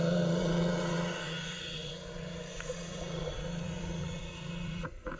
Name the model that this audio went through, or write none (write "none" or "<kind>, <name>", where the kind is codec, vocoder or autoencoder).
vocoder, Vocos